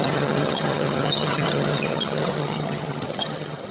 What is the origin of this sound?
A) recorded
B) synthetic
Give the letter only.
B